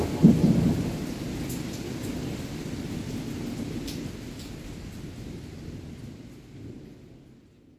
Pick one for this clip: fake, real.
real